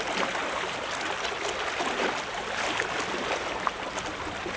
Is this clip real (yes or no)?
yes